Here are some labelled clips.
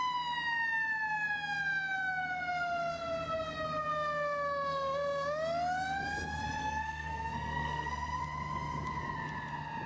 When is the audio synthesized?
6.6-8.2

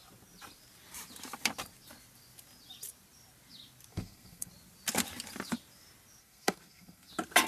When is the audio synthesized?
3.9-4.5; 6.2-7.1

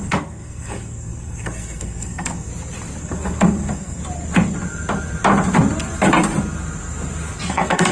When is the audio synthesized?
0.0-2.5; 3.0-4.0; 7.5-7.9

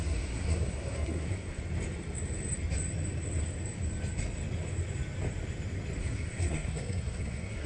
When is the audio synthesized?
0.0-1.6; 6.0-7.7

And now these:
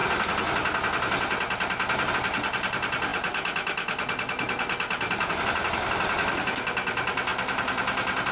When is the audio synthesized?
none